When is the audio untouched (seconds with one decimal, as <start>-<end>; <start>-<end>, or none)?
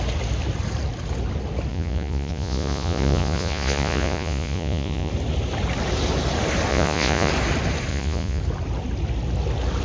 0.0-1.7; 5.1-6.7; 7.3-7.9; 8.4-9.8